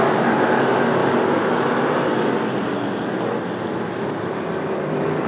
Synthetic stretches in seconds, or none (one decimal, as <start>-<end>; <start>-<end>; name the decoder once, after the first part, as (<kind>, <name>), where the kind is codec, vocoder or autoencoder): none